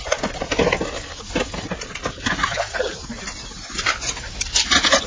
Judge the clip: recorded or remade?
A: recorded